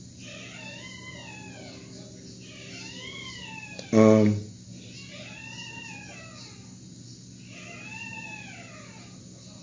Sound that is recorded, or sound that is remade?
recorded